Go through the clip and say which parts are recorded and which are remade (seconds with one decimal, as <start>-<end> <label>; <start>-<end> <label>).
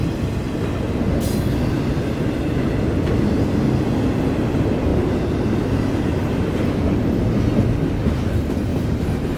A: 0.0-9.4 recorded